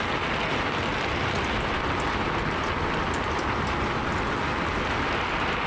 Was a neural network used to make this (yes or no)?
no